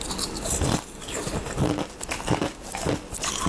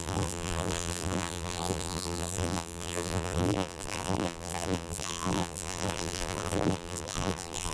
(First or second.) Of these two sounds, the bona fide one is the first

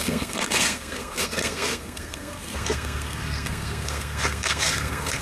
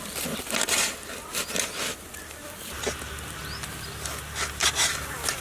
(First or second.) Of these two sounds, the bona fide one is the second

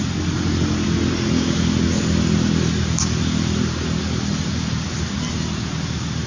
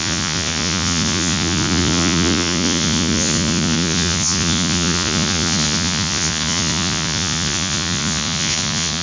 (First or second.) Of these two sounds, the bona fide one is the first